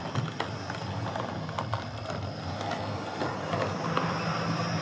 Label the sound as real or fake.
real